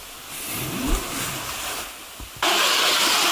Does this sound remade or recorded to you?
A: recorded